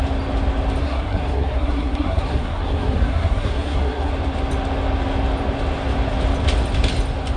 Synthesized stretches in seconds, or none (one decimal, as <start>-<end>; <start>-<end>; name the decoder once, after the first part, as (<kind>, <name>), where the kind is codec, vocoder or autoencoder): 0.8-4.1 (codec, SNAC)